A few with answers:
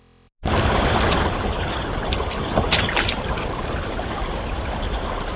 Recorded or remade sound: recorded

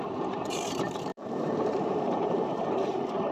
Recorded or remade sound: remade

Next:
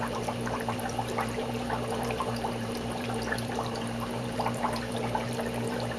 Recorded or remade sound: remade